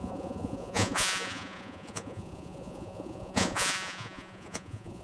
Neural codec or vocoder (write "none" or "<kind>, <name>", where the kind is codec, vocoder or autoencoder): vocoder, Vocos